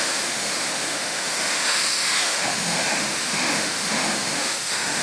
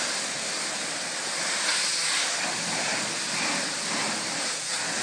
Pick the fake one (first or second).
first